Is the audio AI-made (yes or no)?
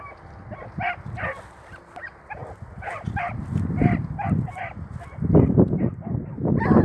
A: no